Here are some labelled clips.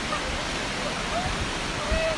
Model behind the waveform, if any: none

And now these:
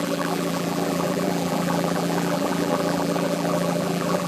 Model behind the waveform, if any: vocoder, BigVGAN v2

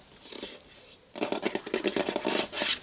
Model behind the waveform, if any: none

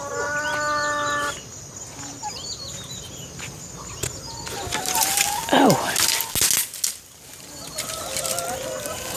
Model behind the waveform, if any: none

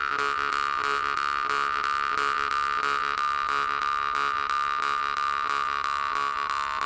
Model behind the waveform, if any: none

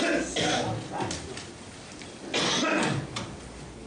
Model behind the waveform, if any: none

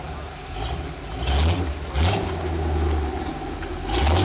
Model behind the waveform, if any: none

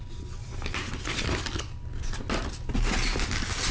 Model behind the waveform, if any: none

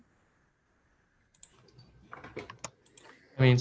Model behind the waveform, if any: none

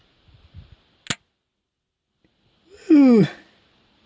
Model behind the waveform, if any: none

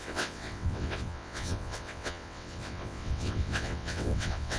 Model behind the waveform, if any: vocoder, WaveNeXt